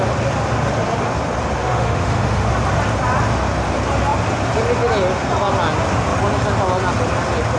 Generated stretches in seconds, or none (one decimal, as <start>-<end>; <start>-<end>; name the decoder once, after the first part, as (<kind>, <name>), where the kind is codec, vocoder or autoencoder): 1.6-2.5 (autoencoder, DAC-VAE)